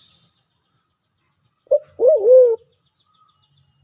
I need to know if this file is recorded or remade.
recorded